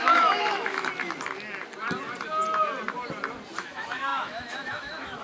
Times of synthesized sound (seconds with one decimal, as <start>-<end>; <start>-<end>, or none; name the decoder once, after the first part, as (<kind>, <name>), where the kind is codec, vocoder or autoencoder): 0.0-0.9 (autoencoder, DAC-VAE); 3.6-5.2